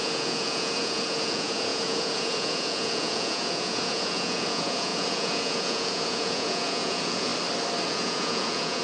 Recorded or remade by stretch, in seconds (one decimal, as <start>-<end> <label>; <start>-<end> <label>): 0.0-7.3 remade; 7.3-7.9 recorded; 7.9-8.8 remade